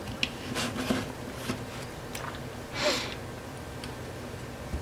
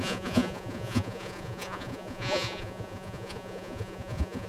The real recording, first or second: first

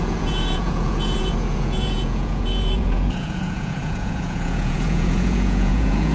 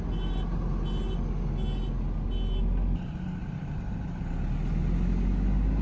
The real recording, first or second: second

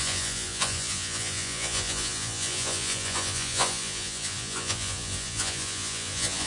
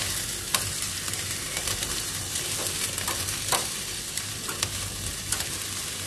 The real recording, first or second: second